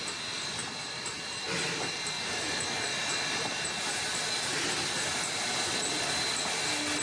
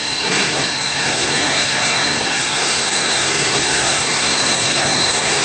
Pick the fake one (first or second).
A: second